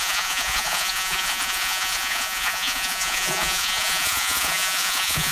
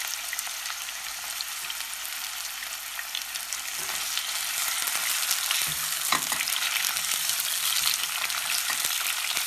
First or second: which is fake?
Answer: first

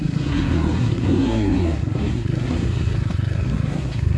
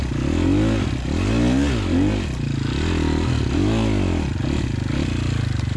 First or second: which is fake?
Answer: first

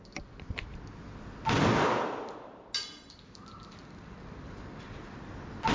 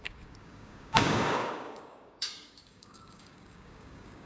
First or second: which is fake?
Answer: second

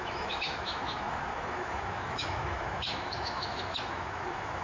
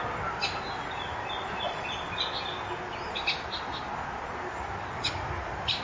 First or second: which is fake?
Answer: first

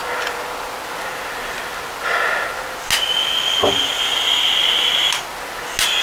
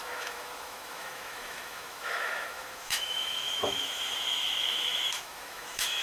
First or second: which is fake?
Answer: second